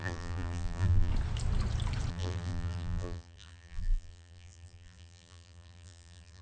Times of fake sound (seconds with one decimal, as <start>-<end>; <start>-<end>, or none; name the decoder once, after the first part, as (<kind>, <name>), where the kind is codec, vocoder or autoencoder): 0.0-1.1 (vocoder, BigVGAN v2); 2.1-6.4

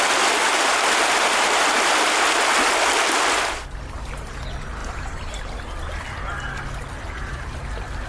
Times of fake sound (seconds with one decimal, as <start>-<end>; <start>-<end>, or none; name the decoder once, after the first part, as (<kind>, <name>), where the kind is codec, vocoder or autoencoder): 4.8-5.4 (vocoder, BigVGAN v2)

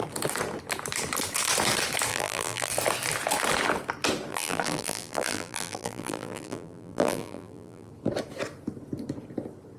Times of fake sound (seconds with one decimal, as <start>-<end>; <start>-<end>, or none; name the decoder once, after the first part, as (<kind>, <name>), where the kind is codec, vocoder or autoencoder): 2.1-2.7 (vocoder, BigVGAN v2); 4.3-7.9

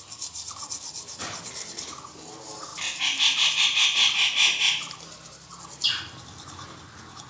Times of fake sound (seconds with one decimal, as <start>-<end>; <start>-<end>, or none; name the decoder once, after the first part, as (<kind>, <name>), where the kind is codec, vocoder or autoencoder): none

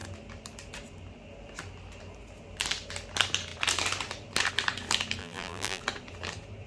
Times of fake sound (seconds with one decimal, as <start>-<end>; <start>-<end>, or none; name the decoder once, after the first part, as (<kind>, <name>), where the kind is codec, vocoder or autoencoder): 5.2-5.8 (vocoder, BigVGAN v2)

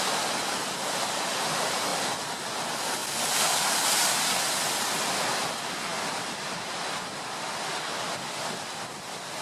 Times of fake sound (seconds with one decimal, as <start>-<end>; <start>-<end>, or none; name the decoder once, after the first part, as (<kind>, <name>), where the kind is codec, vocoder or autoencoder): 3.0-3.6 (vocoder, BigVGAN v2); 5.9-6.9